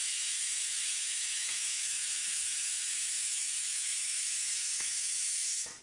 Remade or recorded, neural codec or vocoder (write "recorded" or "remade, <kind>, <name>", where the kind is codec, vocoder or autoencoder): remade, autoencoder, DAC-VAE